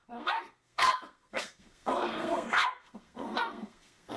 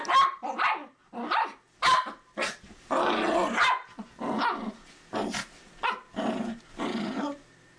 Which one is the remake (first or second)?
first